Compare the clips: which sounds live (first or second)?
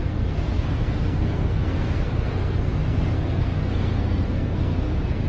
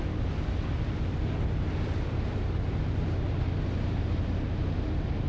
second